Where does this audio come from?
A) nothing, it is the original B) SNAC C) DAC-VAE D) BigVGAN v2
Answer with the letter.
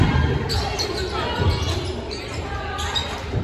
A